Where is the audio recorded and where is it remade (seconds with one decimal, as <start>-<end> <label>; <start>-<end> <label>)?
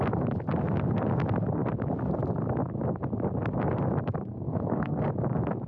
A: 0.0-4.3 recorded; 4.3-5.1 remade; 5.1-5.7 recorded